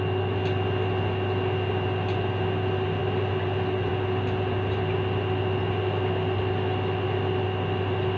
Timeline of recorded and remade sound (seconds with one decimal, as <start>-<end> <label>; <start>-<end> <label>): 0.0-8.2 recorded